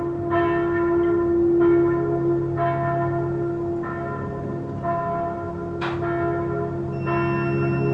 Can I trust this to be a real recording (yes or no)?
yes